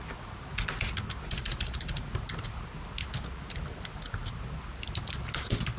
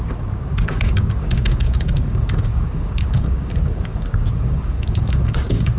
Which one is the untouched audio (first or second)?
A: first